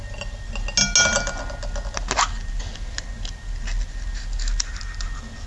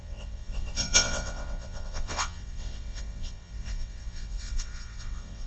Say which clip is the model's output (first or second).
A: second